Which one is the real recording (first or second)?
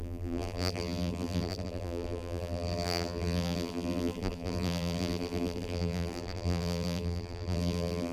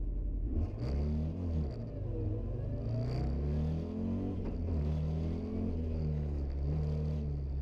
second